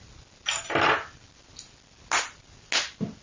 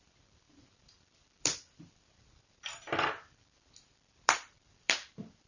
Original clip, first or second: first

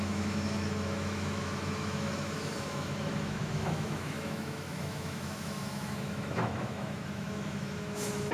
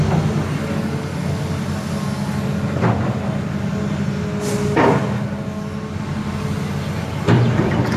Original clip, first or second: second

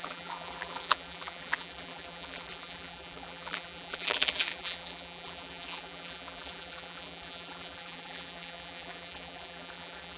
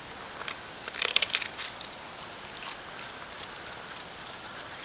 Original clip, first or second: second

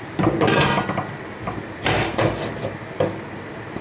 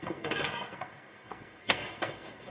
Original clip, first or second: first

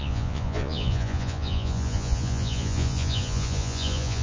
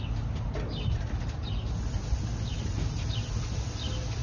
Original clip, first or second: second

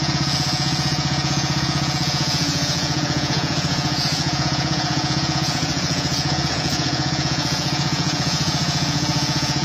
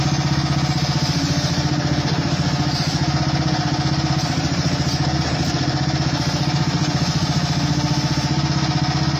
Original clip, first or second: second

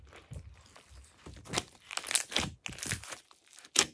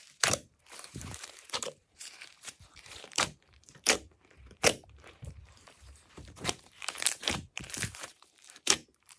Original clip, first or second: first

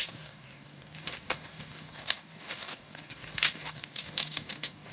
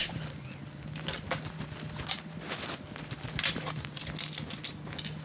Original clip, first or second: second